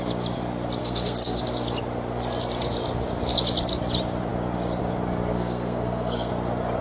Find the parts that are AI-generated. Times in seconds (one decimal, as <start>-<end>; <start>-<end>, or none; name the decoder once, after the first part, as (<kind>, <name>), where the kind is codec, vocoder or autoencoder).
0.8-1.4 (codec, SNAC); 5.3-6.3